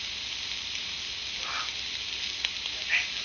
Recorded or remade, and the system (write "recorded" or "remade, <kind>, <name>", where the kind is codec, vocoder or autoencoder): recorded